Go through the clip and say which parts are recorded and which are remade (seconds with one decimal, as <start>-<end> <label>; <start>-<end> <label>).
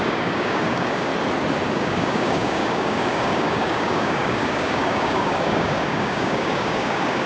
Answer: 0.0-1.1 remade; 1.1-1.7 recorded; 1.7-7.3 remade